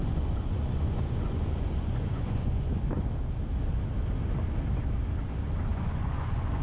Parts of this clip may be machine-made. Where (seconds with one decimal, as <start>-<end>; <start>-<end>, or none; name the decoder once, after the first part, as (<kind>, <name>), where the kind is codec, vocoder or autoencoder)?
0.0-3.0 (vocoder, Vocos); 5.7-6.6